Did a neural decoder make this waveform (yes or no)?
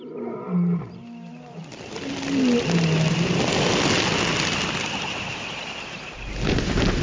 no